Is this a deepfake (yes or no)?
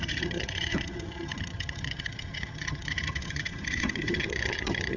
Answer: yes